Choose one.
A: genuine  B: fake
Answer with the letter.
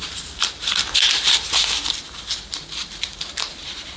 B